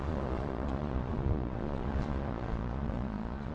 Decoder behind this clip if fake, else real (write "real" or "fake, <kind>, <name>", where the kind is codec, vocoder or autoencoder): fake, vocoder, Vocos